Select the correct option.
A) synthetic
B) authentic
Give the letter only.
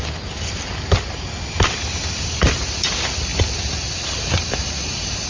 B